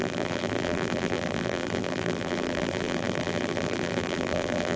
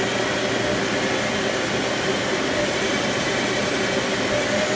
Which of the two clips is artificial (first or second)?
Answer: first